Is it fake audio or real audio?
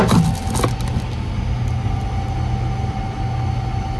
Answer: real